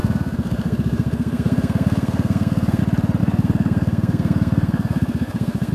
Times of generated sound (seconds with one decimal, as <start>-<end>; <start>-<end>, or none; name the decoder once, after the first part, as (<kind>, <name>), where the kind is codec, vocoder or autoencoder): 0.0-2.8 (codec, SNAC); 3.2-5.7